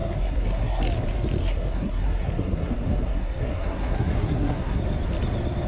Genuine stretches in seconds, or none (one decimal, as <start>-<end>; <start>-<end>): 0.8-1.4; 4.8-5.7